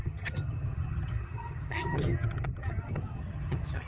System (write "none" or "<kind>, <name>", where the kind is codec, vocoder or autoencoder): vocoder, HiFi-GAN